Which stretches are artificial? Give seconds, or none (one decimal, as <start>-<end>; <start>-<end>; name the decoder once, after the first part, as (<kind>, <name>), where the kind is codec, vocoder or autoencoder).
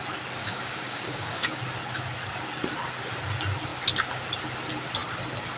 0.4-1.6 (codec, DAC)